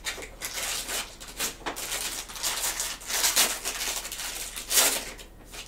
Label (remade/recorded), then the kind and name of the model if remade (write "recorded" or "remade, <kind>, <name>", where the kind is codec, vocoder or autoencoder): recorded